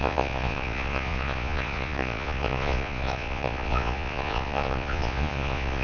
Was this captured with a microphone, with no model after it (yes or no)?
no